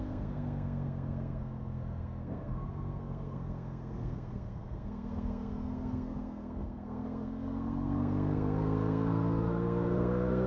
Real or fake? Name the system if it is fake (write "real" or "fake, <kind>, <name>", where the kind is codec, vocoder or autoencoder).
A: fake, codec, SNAC